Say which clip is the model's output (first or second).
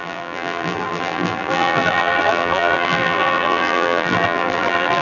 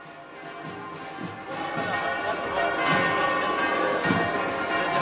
first